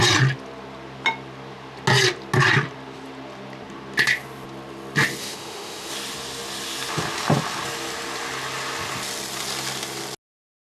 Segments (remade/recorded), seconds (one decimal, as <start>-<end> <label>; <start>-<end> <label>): 0.0-5.2 recorded; 5.2-5.9 remade; 5.9-10.7 recorded